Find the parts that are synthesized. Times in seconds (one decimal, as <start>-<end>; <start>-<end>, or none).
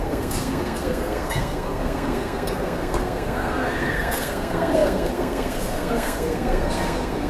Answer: 0.0-7.3